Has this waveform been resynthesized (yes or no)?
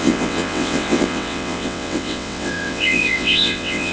yes